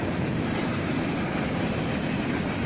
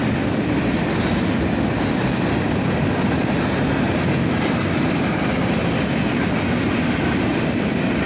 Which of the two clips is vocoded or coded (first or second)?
first